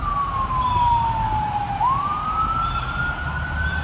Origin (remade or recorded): recorded